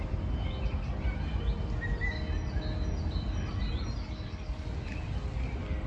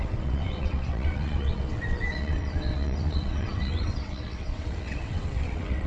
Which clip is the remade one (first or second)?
second